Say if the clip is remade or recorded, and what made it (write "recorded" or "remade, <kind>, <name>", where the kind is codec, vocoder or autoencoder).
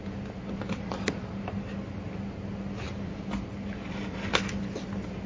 recorded